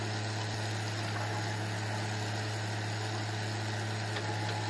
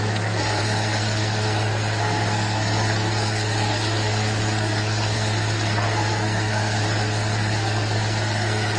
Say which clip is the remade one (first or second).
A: second